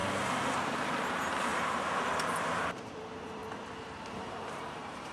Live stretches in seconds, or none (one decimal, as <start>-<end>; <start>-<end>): 0.0-0.8; 1.5-2.4; 3.4-4.0